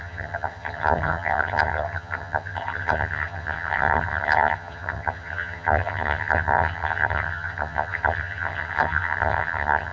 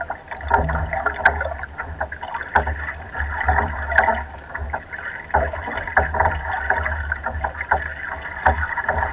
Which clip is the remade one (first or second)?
first